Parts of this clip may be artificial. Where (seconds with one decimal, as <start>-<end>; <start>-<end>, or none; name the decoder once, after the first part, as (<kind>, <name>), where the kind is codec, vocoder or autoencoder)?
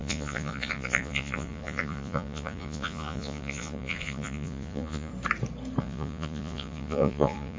0.0-5.1 (vocoder, Vocos); 5.8-7.6